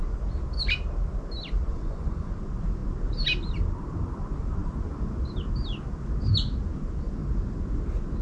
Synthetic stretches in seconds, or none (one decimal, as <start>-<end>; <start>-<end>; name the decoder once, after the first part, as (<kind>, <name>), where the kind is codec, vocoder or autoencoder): 1.7-2.3 (vocoder, Vocos)